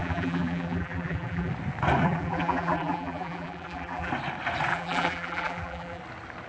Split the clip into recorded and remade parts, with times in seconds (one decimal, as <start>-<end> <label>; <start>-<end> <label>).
0.0-1.5 remade; 1.5-2.0 recorded; 2.0-4.1 remade; 4.1-4.7 recorded; 4.7-6.0 remade; 6.0-6.5 recorded